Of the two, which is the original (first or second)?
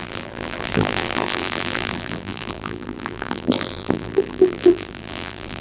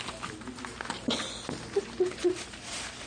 second